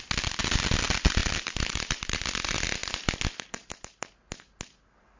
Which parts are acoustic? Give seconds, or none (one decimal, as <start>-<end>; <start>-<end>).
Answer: 0.0-1.2; 2.2-5.2